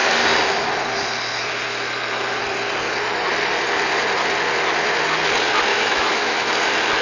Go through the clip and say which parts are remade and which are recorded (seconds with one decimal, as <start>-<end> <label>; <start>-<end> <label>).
0.0-5.7 recorded; 5.7-6.5 remade; 6.5-7.0 recorded